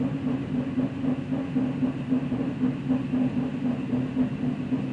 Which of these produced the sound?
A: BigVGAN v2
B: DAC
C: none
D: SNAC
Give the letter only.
C